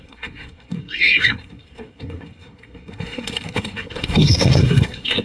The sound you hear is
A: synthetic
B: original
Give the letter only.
A